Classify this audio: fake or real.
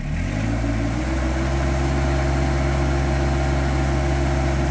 real